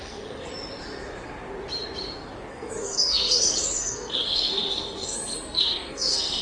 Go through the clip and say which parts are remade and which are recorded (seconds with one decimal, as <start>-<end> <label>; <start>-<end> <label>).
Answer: 0.0-0.5 remade; 0.5-2.5 recorded; 2.5-6.4 remade